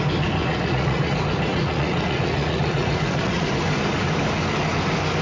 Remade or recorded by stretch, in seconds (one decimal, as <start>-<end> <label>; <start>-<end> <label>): 0.0-0.4 recorded; 0.4-1.1 remade; 1.1-1.5 recorded; 1.5-3.5 remade; 3.5-5.2 recorded